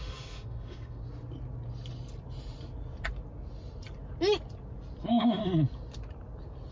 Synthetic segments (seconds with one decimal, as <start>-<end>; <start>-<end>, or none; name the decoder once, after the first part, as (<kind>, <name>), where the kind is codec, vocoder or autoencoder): 0.0-1.0 (autoencoder, DAC-VAE); 5.0-5.4